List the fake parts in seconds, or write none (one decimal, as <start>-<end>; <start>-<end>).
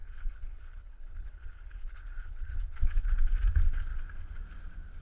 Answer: 0.0-3.0